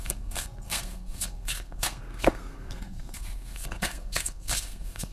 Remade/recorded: remade